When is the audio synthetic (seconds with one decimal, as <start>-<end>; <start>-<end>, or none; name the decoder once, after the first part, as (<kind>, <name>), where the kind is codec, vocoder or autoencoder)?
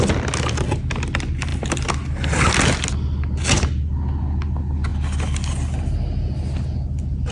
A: none